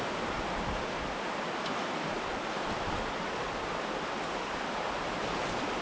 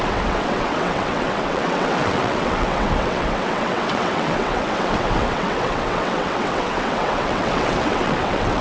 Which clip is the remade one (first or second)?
second